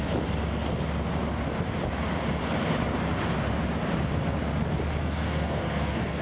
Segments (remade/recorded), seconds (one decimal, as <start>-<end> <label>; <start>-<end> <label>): 0.0-5.0 recorded; 5.0-6.2 remade